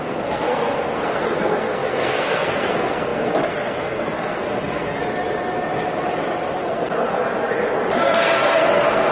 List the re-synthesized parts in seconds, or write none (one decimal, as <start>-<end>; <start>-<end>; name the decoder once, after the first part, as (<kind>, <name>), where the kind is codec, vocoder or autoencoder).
0.0-5.0 (codec, SNAC); 6.6-7.2; 8.0-9.1